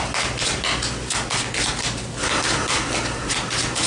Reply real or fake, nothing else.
real